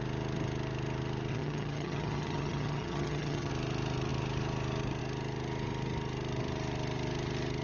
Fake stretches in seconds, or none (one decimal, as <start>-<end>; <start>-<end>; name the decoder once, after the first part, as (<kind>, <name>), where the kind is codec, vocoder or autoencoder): 1.3-3.5 (vocoder, HiFi-GAN)